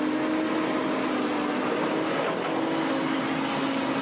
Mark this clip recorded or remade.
recorded